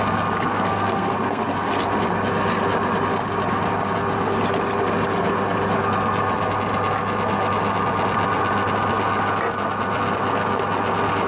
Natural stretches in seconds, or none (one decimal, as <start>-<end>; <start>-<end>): 0.0-0.5; 1.4-11.3